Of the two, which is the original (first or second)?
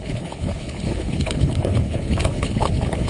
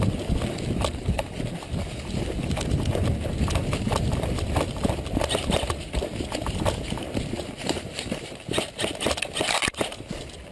second